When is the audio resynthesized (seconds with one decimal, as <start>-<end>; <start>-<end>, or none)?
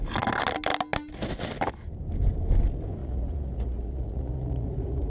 3.0-5.1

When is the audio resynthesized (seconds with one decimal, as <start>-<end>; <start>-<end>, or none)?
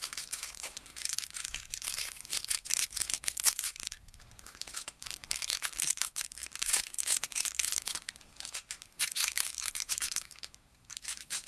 0.0-11.5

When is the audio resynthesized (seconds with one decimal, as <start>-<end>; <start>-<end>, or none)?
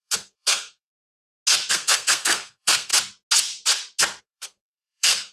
0.0-0.9; 1.7-2.9; 4.2-5.3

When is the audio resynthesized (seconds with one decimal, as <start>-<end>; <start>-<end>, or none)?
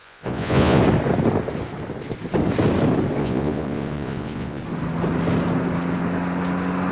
0.0-0.8; 3.2-4.6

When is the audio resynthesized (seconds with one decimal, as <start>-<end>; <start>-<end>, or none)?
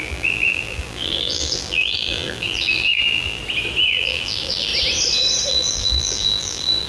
0.0-3.4; 3.9-4.7; 5.5-6.9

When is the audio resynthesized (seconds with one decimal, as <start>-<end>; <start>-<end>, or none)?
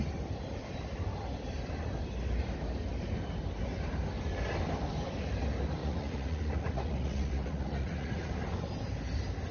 5.8-8.3